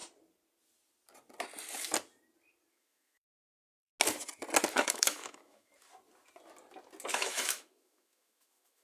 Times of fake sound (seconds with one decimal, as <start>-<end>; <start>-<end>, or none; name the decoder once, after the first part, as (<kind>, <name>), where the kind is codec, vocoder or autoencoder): 2.7-3.9 (autoencoder, DAC-VAE); 4.7-5.7; 7.1-8.8